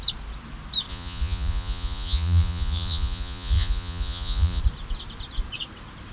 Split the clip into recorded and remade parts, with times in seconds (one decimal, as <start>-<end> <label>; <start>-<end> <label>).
0.0-0.9 recorded; 0.9-4.6 remade; 4.6-6.1 recorded